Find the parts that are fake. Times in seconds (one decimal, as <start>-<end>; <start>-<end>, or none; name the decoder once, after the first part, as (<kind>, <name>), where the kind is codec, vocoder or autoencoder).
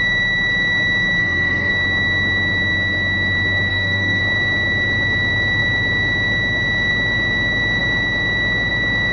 1.2-1.7 (codec, SNAC); 3.7-4.2